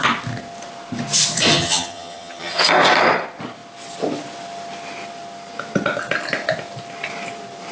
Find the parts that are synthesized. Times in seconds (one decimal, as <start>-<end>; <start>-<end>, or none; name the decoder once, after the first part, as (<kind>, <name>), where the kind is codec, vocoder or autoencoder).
1.5-2.6 (vocoder, HiFi-GAN)